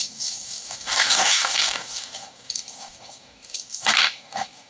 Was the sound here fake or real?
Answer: fake